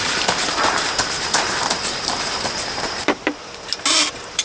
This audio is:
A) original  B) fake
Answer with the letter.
B